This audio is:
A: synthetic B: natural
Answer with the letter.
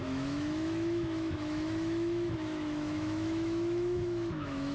A